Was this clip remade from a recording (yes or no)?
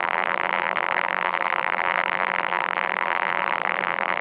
yes